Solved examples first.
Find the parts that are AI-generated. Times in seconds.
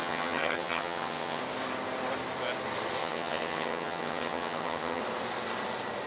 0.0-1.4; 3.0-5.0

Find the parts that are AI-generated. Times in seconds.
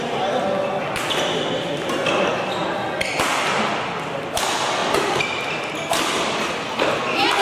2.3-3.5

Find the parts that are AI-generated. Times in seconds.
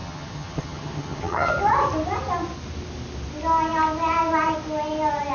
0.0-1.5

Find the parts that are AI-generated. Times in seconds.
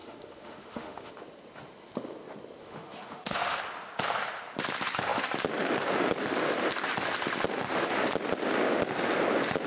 0.0-1.1; 2.6-3.6